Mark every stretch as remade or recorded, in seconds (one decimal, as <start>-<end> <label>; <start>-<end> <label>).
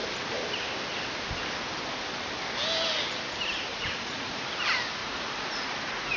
0.0-3.7 recorded; 3.7-4.5 remade; 4.5-5.0 recorded; 5.0-6.2 remade